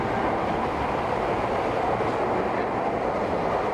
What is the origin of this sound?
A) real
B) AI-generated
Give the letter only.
A